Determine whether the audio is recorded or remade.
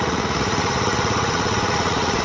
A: remade